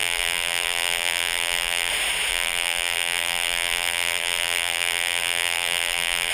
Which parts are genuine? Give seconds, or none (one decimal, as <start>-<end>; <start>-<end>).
1.9-2.3